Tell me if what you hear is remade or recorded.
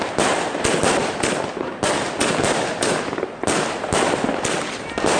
recorded